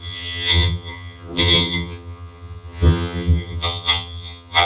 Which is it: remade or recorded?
remade